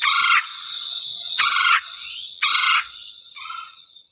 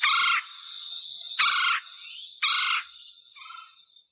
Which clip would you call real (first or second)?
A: second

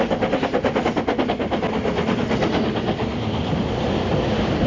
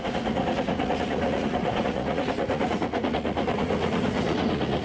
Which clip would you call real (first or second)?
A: first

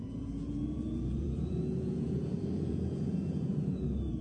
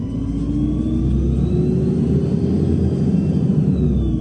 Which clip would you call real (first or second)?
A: second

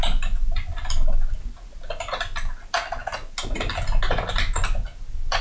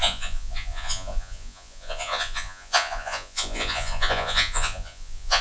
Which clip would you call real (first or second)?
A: first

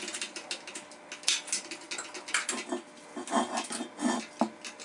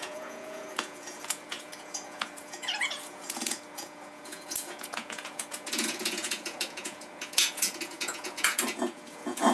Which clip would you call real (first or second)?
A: first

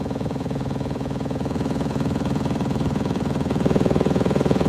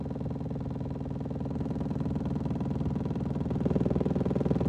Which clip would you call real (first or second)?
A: second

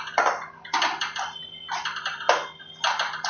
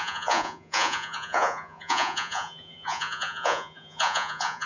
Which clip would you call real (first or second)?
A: first